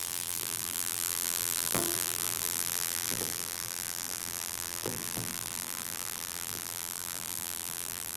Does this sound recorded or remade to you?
remade